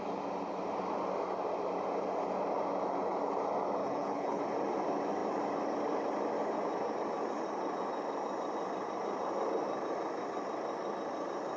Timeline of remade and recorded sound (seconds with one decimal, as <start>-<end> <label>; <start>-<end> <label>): 0.0-3.8 recorded; 3.8-4.4 remade; 4.4-11.6 recorded

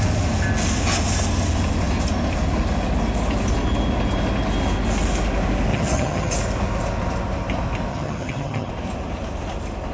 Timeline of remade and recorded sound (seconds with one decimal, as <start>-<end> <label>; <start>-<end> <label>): 0.0-5.7 recorded; 5.7-6.3 remade; 6.3-7.9 recorded; 7.9-8.7 remade; 8.7-9.9 recorded

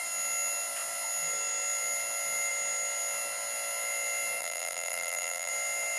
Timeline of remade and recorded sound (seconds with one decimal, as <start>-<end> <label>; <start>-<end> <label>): 0.0-4.4 recorded; 4.4-5.5 remade; 5.5-6.0 recorded

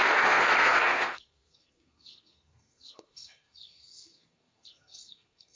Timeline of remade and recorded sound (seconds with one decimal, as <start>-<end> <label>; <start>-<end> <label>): 0.0-5.6 remade

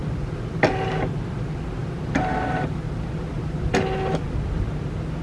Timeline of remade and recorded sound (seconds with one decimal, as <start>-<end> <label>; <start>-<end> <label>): 0.0-0.7 remade; 0.7-1.8 recorded; 1.8-3.6 remade; 3.6-5.2 recorded

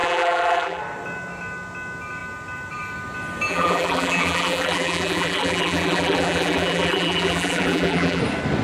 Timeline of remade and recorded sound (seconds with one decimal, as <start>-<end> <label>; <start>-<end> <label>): 0.0-0.8 remade; 0.8-3.5 recorded; 3.5-8.2 remade; 8.2-8.6 recorded

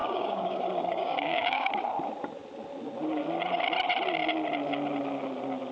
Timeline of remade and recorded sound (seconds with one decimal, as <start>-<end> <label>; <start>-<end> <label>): 0.0-1.7 remade; 1.7-5.7 recorded

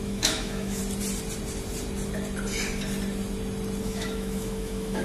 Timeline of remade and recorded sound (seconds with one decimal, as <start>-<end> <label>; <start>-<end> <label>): 0.0-0.8 remade; 0.8-3.8 recorded; 3.8-5.0 remade